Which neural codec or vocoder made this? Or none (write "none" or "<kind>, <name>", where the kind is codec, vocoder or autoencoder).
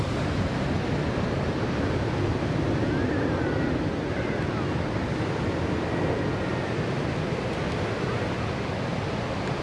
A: none